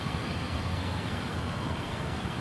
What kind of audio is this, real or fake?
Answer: fake